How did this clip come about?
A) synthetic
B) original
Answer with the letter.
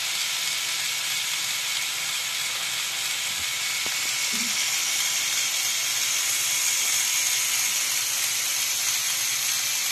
B